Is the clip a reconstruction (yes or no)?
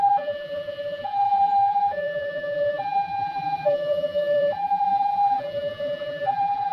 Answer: yes